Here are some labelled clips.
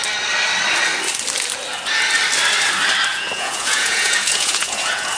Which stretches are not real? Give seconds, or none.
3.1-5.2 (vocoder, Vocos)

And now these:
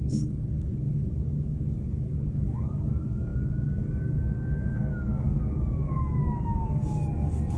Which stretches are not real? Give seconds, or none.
0.0-7.6 (codec, DAC)